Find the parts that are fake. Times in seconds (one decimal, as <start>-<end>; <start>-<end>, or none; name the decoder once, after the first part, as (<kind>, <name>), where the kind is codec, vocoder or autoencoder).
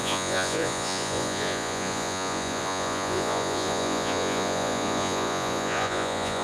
0.0-6.4 (vocoder, Vocos)